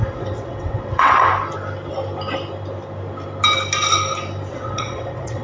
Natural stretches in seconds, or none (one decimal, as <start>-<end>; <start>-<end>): 1.3-4.5